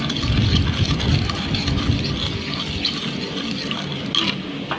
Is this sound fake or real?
real